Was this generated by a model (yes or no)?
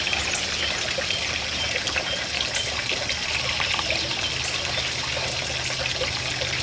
no